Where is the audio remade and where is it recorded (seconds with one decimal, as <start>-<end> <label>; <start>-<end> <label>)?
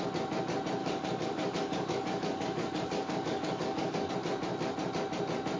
0.0-0.8 recorded; 0.8-4.1 remade; 4.1-5.6 recorded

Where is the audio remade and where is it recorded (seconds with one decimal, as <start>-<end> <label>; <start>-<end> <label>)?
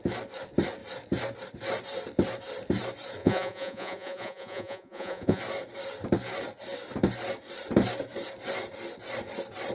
0.0-3.2 recorded; 3.2-5.4 remade; 5.4-9.7 recorded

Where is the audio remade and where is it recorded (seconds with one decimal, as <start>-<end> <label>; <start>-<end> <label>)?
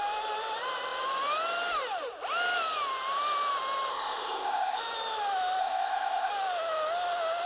0.0-3.9 recorded; 3.9-4.8 remade; 4.8-5.6 recorded; 5.6-6.3 remade; 6.3-7.5 recorded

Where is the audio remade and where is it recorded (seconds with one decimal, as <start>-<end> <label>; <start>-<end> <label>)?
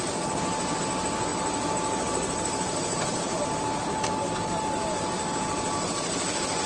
0.0-6.7 recorded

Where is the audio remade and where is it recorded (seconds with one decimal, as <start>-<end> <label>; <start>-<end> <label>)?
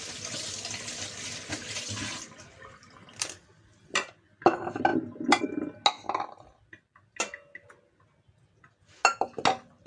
0.0-9.9 recorded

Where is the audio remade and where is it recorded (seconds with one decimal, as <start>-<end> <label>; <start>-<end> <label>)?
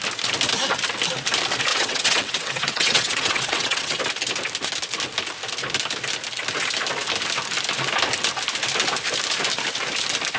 0.0-1.7 recorded; 1.7-4.0 remade; 4.0-10.4 recorded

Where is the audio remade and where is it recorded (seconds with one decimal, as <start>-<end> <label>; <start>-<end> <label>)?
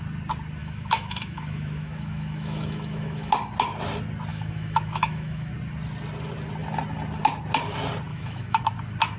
0.0-0.6 recorded; 0.6-3.3 remade; 3.3-4.3 recorded; 4.3-5.5 remade; 5.5-8.1 recorded; 8.1-8.6 remade; 8.6-9.2 recorded